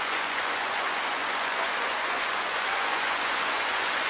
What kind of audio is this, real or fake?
fake